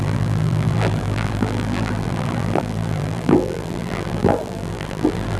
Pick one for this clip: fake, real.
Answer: fake